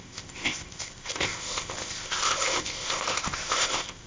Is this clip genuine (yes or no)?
no